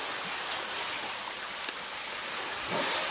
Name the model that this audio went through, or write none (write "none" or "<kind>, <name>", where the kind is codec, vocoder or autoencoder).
none